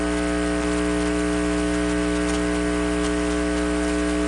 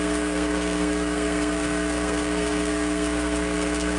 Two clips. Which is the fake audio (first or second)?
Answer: second